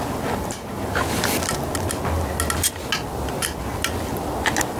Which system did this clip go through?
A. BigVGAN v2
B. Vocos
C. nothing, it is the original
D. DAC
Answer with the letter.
C